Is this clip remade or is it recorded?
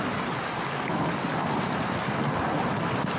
recorded